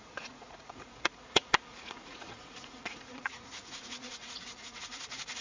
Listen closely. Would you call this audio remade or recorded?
remade